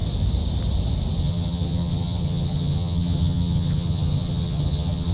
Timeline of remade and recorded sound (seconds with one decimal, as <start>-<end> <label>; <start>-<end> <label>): 0.0-1.2 recorded; 1.2-5.1 remade